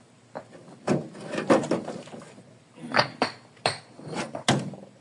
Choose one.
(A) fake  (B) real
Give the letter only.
B